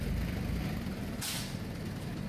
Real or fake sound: real